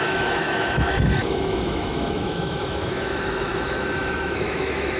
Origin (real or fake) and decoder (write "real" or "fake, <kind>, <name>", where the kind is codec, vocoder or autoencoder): fake, autoencoder, DAC-VAE